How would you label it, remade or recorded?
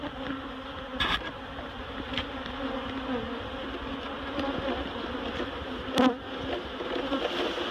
recorded